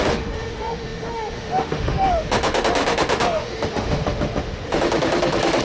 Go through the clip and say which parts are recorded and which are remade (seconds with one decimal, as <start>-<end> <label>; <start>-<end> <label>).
0.0-5.6 remade